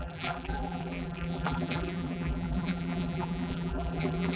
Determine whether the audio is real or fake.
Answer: fake